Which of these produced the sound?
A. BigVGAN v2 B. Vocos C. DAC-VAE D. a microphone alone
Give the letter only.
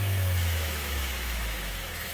C